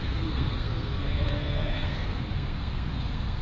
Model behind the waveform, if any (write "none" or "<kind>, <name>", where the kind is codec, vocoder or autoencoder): codec, SNAC